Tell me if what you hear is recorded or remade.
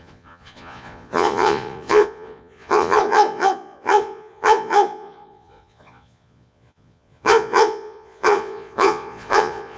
remade